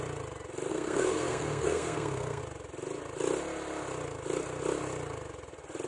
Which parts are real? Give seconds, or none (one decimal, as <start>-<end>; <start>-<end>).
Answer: 0.0-0.7; 2.4-5.9